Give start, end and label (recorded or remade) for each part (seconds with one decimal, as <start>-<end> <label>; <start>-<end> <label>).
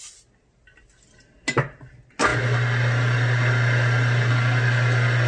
0.0-5.3 recorded